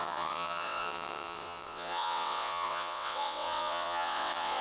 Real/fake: fake